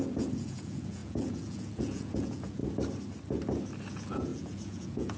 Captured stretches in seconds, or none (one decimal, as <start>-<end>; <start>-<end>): 2.6-3.9